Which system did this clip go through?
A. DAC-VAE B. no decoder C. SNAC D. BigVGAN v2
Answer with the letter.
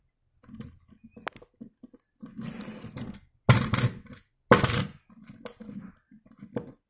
B